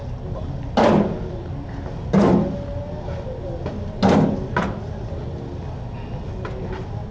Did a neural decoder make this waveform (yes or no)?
no